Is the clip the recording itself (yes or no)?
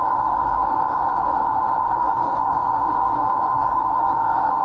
no